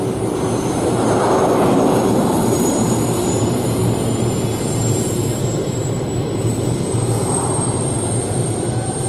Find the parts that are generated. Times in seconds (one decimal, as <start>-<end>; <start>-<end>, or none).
0.0-3.8; 4.6-9.1